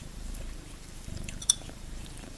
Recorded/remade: remade